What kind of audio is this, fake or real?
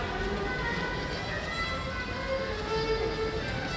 real